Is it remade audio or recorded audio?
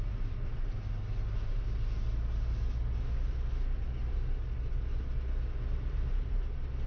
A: recorded